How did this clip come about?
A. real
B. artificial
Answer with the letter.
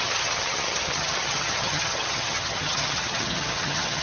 B